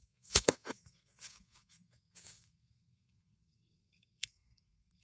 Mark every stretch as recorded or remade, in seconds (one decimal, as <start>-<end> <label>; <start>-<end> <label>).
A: 0.0-5.0 remade